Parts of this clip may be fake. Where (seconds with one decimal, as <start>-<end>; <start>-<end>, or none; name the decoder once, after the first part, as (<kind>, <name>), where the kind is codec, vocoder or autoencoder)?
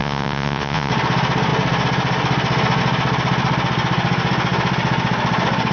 0.0-0.9 (vocoder, Vocos)